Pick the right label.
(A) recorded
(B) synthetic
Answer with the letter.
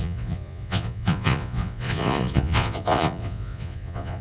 B